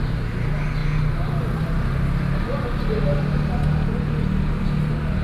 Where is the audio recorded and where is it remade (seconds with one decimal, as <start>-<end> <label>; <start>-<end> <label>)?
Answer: 0.0-5.2 recorded